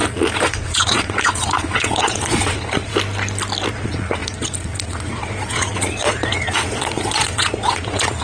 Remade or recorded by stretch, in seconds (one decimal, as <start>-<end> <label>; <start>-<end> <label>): 0.0-2.9 remade; 2.9-3.7 recorded; 3.7-8.2 remade